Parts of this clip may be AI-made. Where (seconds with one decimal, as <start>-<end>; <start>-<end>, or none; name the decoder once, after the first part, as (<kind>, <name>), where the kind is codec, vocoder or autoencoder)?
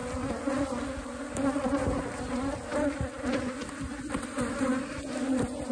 none